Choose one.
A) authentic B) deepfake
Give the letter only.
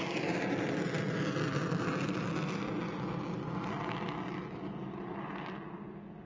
A